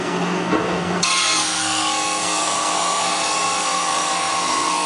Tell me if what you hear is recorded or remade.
remade